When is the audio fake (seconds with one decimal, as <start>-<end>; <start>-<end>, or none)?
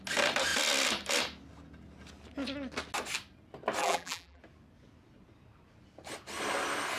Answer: 3.8-4.4